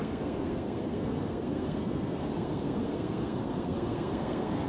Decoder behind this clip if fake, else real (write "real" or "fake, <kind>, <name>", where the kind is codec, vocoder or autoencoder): fake, codec, SNAC